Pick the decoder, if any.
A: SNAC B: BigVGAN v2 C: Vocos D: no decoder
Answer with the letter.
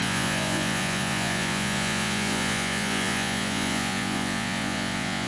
C